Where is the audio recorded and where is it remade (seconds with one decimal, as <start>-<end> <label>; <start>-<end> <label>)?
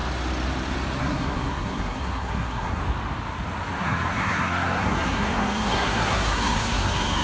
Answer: 0.0-1.0 recorded; 1.0-2.8 remade; 2.8-3.8 recorded; 3.8-7.2 remade